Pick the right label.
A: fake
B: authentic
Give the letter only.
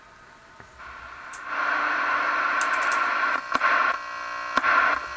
B